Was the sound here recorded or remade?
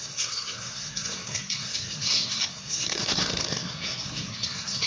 remade